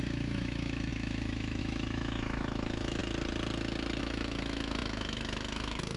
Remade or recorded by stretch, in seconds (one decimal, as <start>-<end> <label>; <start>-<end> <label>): 0.0-3.0 remade; 3.0-4.0 recorded; 4.0-6.0 remade